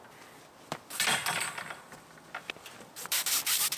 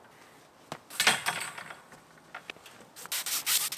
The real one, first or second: second